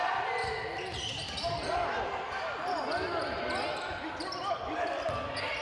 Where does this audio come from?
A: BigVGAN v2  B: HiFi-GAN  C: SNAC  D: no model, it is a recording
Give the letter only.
D